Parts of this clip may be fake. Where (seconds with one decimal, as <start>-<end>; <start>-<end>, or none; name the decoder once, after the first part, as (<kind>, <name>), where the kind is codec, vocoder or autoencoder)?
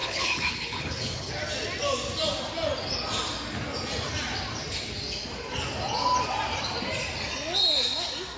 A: 0.0-1.3 (codec, HILCodec)